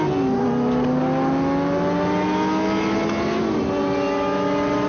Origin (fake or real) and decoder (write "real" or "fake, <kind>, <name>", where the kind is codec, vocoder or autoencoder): real